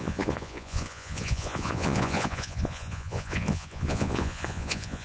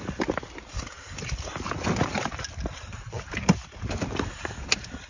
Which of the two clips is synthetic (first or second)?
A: first